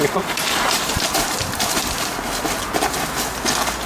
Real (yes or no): yes